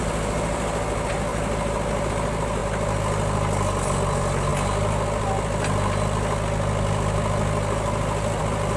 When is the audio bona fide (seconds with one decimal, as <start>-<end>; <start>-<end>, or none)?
0.0-8.8